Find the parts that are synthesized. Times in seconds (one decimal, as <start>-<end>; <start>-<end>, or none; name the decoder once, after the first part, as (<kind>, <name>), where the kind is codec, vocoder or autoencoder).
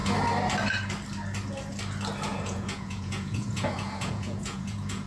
2.3-5.1 (vocoder, Vocos)